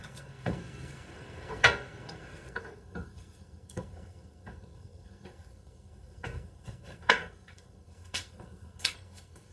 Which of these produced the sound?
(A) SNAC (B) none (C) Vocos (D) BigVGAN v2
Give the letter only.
A